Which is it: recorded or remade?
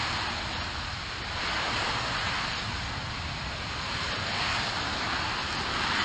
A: recorded